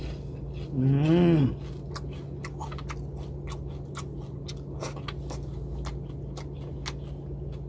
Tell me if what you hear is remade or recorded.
recorded